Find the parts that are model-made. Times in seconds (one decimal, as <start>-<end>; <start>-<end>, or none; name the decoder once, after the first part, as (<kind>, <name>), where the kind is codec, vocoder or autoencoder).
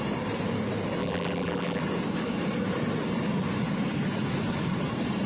1.0-1.8 (vocoder, BigVGAN v2)